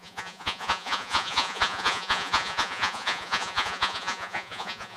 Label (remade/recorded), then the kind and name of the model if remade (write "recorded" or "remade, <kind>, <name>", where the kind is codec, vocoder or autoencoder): remade, vocoder, Vocos